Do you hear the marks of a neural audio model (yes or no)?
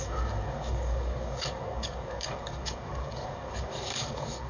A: yes